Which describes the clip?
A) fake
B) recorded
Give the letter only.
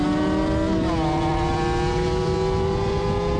B